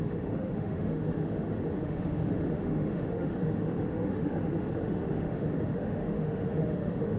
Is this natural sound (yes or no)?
no